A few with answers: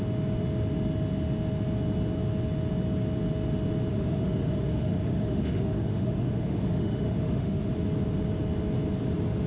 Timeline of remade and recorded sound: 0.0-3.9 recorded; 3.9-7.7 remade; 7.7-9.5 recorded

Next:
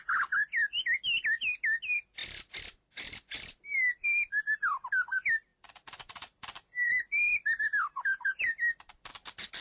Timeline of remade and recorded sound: 0.0-2.2 recorded; 2.2-4.3 remade; 4.3-5.5 recorded; 5.5-9.1 remade; 9.1-9.6 recorded

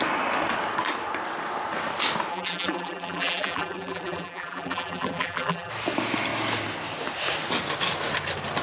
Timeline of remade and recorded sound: 0.0-2.3 recorded; 2.3-5.7 remade; 5.7-8.6 recorded

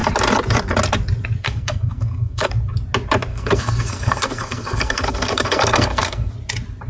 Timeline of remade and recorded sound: 0.0-1.4 recorded; 1.4-2.5 remade; 2.5-3.3 recorded; 3.3-6.3 remade; 6.3-6.9 recorded

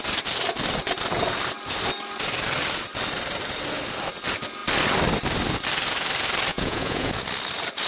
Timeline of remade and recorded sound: 0.0-6.5 recorded; 6.5-7.1 remade; 7.1-7.9 recorded